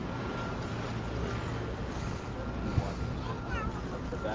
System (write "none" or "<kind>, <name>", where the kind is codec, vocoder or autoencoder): none